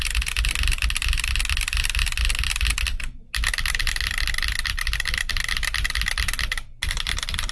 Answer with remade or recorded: recorded